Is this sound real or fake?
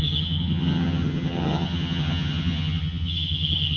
fake